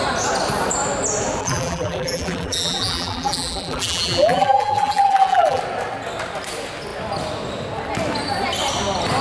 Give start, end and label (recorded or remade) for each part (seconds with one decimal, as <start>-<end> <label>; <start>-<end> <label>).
0.0-1.4 recorded; 1.4-5.6 remade; 5.6-9.2 recorded